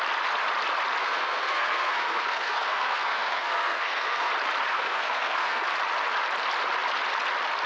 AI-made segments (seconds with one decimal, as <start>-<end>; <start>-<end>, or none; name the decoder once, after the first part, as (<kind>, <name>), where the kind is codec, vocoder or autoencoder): 1.0-4.3 (codec, SNAC); 4.7-5.6